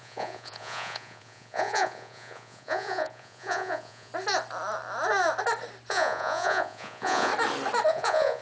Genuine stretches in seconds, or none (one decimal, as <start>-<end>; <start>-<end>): 4.1-5.9; 7.3-7.9